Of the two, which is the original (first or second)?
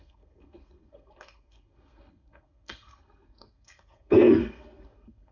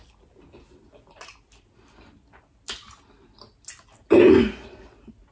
second